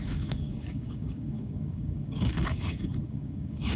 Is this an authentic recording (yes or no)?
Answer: no